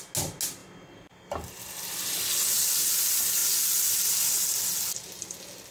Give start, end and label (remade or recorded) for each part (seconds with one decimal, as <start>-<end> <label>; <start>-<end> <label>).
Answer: 0.0-0.6 recorded; 0.6-2.9 remade; 2.9-5.7 recorded

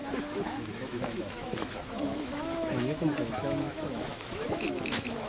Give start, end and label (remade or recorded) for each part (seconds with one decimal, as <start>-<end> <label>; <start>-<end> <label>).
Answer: 0.0-5.3 remade

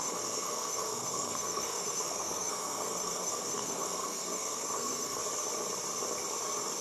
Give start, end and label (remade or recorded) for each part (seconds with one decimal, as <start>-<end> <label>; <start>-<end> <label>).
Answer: 0.0-5.2 remade; 5.2-6.8 recorded

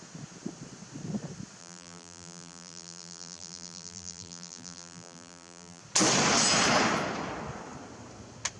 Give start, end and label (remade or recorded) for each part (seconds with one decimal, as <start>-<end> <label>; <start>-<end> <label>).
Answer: 0.0-1.6 recorded; 1.6-5.8 remade; 5.8-8.6 recorded

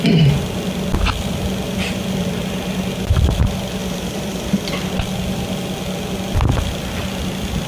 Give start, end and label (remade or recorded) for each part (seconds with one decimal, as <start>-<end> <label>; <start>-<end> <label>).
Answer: 0.0-3.8 recorded; 3.8-4.9 remade; 4.9-7.7 recorded

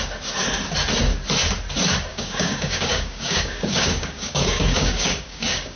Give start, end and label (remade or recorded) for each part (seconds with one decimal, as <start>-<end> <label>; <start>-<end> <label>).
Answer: 0.0-2.1 recorded; 2.1-5.8 remade

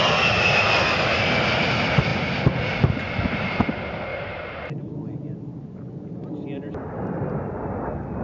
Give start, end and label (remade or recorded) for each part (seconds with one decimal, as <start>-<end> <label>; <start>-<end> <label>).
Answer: 0.0-4.1 recorded; 4.1-4.6 remade; 4.6-8.2 recorded